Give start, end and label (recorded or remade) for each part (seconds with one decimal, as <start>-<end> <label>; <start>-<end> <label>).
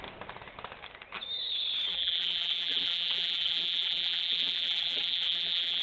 0.0-1.9 recorded; 1.9-5.8 remade